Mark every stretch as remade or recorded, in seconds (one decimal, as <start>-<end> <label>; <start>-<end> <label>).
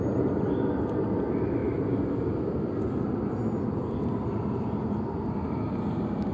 0.0-6.3 recorded